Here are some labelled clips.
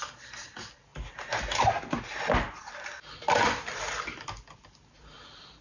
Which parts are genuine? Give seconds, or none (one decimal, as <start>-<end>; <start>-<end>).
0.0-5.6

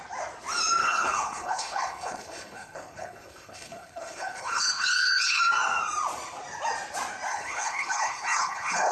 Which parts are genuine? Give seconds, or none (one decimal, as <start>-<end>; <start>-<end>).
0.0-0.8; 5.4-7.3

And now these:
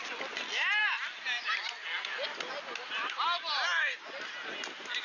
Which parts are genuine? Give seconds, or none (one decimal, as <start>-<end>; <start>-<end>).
0.0-5.0

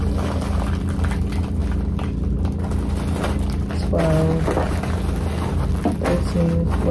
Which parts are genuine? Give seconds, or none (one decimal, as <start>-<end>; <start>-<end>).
0.0-6.9

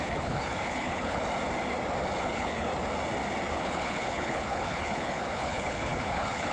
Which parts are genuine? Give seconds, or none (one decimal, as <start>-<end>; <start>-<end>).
1.2-2.2; 2.7-3.5

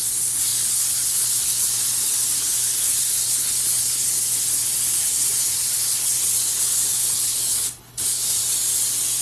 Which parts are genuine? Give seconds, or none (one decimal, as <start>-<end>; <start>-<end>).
8.4-9.2